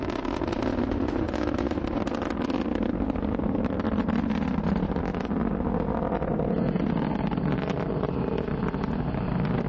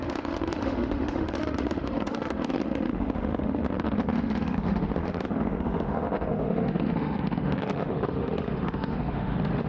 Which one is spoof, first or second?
second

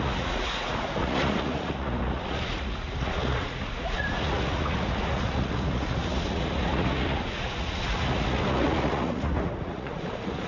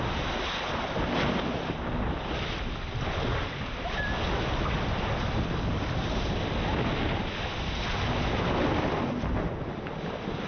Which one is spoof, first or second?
first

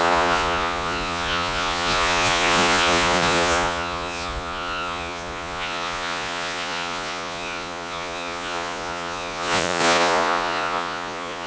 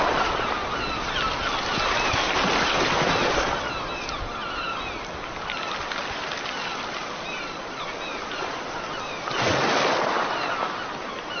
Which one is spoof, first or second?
first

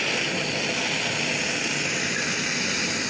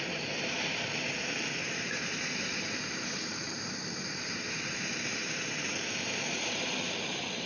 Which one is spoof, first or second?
second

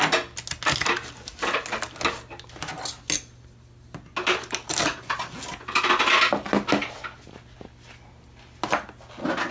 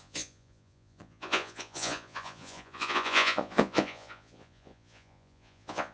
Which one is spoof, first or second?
second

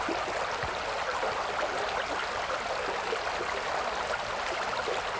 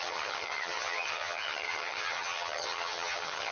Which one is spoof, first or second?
second